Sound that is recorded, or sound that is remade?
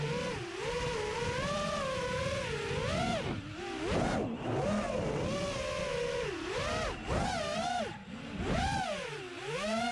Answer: recorded